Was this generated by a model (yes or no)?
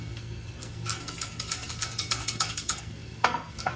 yes